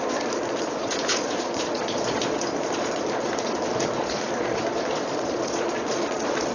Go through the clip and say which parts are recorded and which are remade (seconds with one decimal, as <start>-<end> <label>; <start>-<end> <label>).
0.0-6.5 remade